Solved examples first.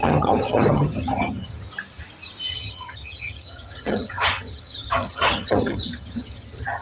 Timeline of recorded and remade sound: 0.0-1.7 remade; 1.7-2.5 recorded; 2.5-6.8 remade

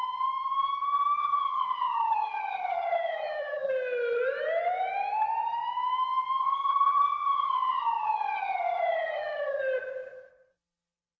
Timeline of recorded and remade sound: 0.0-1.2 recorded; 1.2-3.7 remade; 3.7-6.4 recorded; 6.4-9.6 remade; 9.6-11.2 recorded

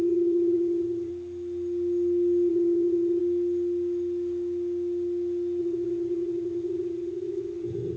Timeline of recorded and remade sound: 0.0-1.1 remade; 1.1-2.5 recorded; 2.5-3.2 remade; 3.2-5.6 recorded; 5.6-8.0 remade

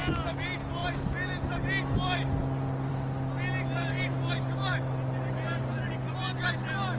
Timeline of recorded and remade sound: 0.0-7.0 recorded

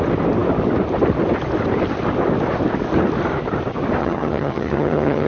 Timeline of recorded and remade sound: 0.0-4.0 recorded; 4.0-5.3 remade

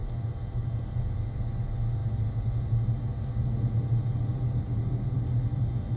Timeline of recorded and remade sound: 0.0-6.0 recorded

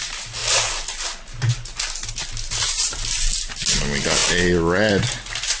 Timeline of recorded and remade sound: 0.0-5.6 recorded